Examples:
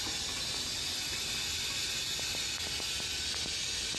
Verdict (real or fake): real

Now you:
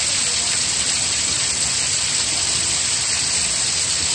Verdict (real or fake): real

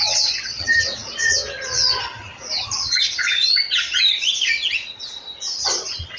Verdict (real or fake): fake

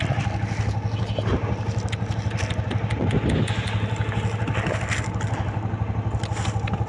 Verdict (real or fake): real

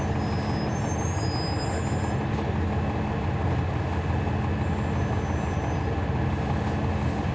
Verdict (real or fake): real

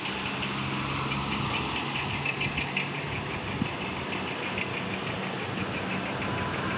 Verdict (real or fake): real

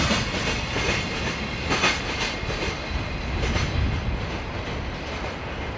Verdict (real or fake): real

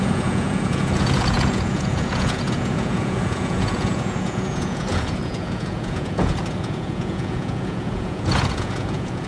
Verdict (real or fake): fake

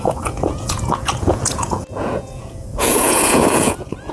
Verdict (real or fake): fake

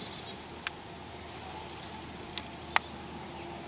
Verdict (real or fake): real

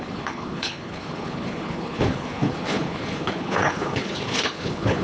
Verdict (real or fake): fake